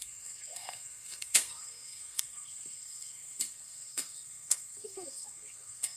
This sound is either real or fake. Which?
fake